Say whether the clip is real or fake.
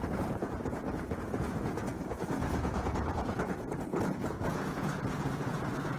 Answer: fake